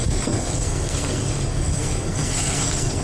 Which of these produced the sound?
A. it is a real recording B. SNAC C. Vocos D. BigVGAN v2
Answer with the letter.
B